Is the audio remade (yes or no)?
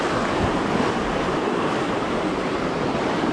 no